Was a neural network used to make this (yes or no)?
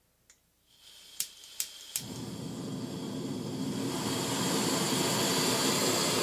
no